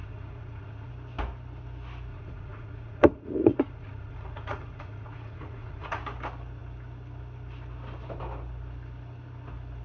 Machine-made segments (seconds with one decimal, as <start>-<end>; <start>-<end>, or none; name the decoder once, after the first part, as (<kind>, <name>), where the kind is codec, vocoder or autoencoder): 0.0-0.9 (vocoder, Vocos); 2.1-6.0